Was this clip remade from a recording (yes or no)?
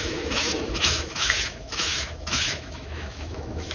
yes